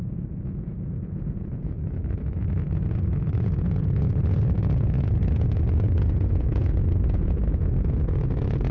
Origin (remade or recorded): remade